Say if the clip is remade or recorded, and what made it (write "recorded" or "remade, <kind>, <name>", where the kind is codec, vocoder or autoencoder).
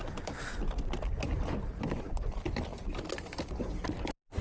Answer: recorded